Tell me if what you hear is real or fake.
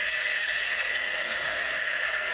fake